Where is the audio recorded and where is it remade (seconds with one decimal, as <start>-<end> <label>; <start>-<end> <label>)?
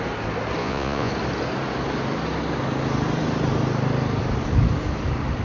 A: 0.0-0.6 recorded; 0.6-1.1 remade; 1.1-5.4 recorded